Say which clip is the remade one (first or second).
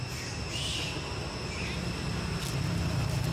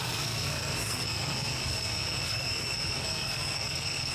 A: second